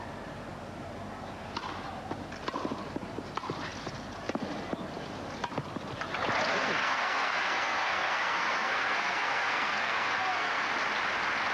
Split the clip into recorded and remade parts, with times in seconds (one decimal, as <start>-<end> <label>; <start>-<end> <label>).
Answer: 0.0-6.5 recorded; 6.5-10.7 remade; 10.7-11.5 recorded